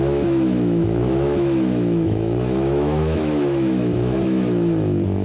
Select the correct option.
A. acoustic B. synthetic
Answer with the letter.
B